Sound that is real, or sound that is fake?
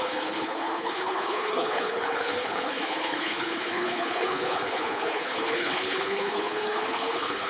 fake